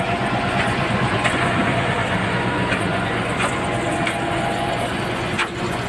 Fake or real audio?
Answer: fake